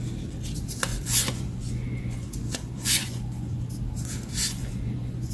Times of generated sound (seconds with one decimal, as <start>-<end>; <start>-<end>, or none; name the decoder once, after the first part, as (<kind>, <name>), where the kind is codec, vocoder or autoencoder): 0.9-3.6 (vocoder, Vocos); 4.4-5.3